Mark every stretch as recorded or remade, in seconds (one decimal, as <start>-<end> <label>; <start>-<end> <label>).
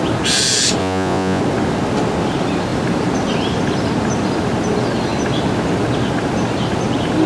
0.0-0.8 recorded; 0.8-1.4 remade; 1.4-7.3 recorded